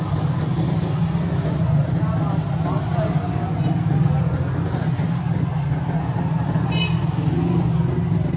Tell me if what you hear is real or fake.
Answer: real